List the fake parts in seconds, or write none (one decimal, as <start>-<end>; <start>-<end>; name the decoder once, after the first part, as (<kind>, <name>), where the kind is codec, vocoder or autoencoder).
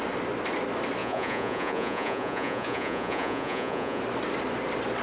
1.0-4.0 (vocoder, Vocos)